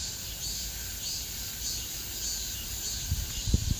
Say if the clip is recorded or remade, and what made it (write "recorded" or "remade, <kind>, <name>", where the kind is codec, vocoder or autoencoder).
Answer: recorded